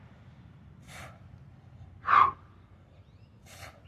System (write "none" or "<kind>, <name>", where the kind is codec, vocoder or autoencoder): none